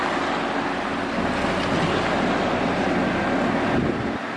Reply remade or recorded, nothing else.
recorded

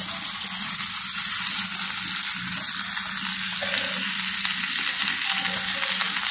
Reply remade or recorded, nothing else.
recorded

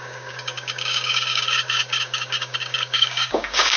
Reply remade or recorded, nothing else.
remade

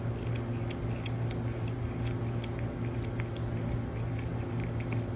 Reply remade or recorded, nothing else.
recorded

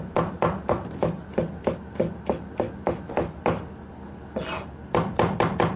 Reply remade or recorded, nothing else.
recorded